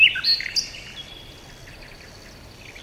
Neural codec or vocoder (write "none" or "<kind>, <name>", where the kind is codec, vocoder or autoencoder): none